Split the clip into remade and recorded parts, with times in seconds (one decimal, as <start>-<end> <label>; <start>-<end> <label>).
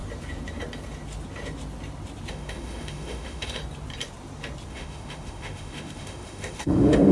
0.0-2.3 recorded; 2.3-3.6 remade; 3.6-4.7 recorded; 4.7-7.1 remade